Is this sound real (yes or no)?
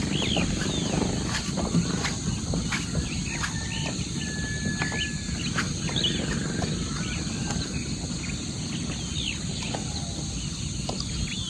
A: yes